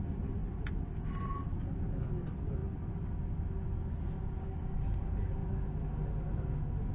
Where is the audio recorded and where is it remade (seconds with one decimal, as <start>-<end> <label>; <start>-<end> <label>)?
0.0-6.9 recorded